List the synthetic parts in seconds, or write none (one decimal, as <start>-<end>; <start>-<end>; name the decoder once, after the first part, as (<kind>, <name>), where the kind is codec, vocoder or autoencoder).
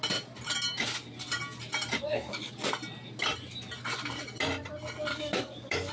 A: 2.1-2.7 (codec, DAC); 5.1-5.9